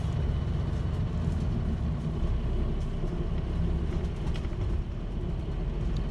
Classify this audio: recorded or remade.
recorded